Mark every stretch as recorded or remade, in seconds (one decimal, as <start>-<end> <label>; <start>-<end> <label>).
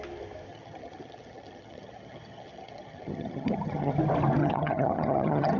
0.0-0.5 recorded; 0.5-3.9 remade; 3.9-4.4 recorded; 4.4-5.6 remade